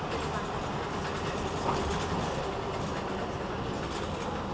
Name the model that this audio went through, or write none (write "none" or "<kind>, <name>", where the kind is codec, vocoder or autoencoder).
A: none